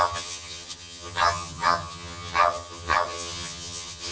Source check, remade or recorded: remade